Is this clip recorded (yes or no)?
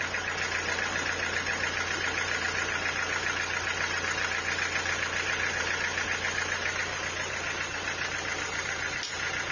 yes